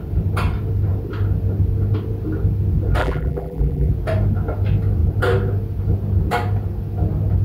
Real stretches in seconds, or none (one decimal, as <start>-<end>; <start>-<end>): 0.0-3.0; 3.9-7.4